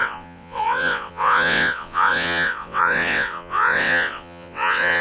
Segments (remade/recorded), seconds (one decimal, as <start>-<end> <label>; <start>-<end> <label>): 0.0-5.0 remade